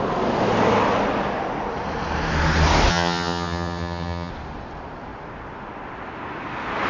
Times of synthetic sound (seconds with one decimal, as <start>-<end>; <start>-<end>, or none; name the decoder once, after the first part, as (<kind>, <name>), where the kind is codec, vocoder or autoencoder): 2.9-4.3 (vocoder, HiFi-GAN)